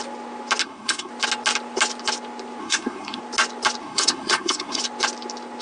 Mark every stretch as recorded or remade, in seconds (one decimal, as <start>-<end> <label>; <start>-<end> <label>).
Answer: 0.0-0.6 recorded; 0.6-1.1 remade; 1.1-2.6 recorded; 2.6-3.2 remade; 3.2-3.8 recorded; 3.8-4.8 remade; 4.8-5.6 recorded